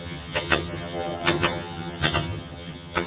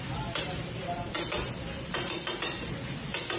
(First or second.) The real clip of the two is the second